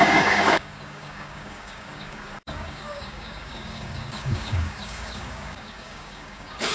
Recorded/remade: remade